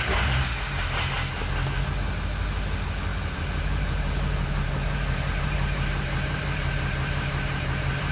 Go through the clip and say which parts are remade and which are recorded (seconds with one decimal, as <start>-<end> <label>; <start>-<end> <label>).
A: 0.0-3.1 recorded; 3.1-8.1 remade